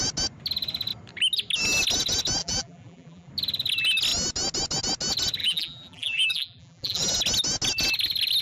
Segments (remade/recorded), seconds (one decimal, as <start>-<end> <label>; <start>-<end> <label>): 0.0-2.4 recorded; 2.4-3.3 remade; 3.3-5.4 recorded; 5.4-7.0 remade; 7.0-8.4 recorded